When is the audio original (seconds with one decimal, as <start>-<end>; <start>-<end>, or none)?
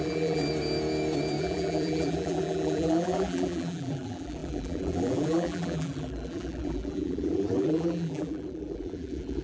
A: 0.4-1.4